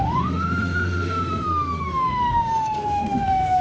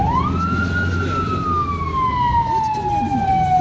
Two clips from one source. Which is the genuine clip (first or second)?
second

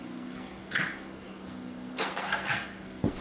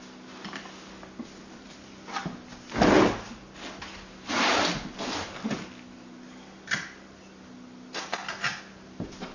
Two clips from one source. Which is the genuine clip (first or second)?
second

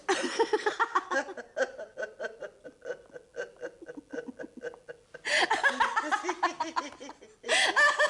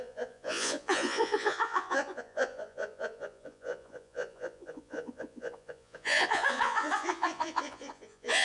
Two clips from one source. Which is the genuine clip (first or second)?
first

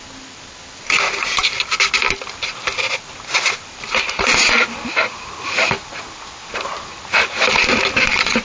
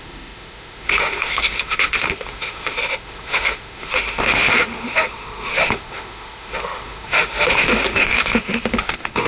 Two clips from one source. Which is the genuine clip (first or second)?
first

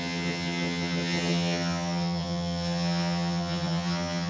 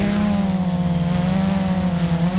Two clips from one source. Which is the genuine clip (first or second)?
second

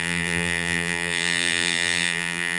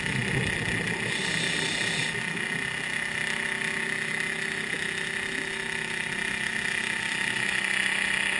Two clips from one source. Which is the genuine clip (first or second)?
second